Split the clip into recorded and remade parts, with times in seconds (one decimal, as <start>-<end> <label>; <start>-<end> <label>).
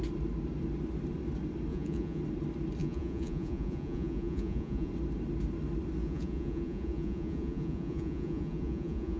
0.0-1.7 recorded; 1.7-2.2 remade; 2.2-2.8 recorded; 2.8-4.9 remade; 4.9-6.0 recorded; 6.0-9.2 remade